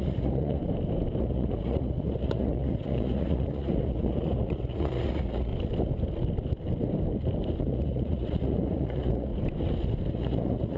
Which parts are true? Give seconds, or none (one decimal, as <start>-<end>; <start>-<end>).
0.6-1.2; 5.5-7.6; 9.3-10.1